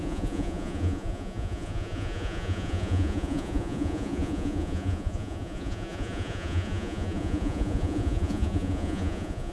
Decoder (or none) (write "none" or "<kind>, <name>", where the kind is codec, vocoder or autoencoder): vocoder, Vocos